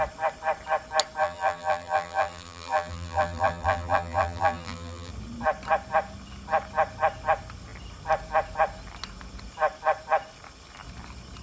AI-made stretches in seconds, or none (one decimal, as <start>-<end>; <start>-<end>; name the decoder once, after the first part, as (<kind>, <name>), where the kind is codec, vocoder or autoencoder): 1.2-5.1 (vocoder, BigVGAN v2)